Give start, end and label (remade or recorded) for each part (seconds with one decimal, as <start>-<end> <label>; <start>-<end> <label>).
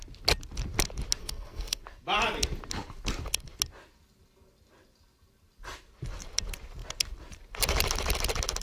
0.0-1.2 recorded; 1.2-1.8 remade; 1.8-8.6 recorded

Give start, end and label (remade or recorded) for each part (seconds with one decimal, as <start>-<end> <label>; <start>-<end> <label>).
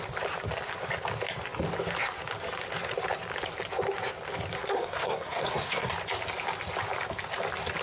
0.0-4.7 recorded; 4.7-5.9 remade; 5.9-7.8 recorded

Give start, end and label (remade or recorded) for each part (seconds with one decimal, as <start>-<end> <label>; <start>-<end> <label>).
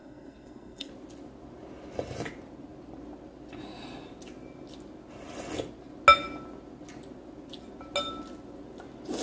0.0-0.9 remade; 0.9-9.2 recorded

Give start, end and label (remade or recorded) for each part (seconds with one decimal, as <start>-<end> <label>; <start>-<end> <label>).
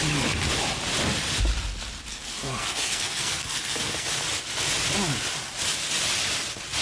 0.0-2.1 recorded; 2.1-4.2 remade; 4.2-6.8 recorded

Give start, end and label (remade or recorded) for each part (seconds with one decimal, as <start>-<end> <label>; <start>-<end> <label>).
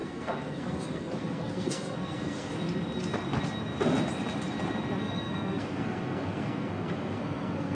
0.0-2.5 remade; 2.5-5.0 recorded; 5.0-7.7 remade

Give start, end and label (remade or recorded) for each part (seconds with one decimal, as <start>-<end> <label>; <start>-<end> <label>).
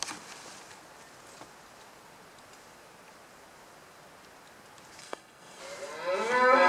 0.0-5.0 recorded; 5.0-5.6 remade; 5.6-6.7 recorded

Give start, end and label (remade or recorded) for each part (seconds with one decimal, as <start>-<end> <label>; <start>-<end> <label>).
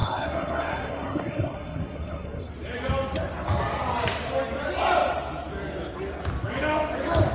0.0-2.5 remade; 2.5-7.3 recorded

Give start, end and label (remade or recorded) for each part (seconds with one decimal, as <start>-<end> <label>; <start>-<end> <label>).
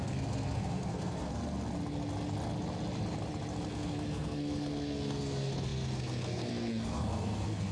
0.0-1.4 remade; 1.4-3.7 recorded; 3.7-7.7 remade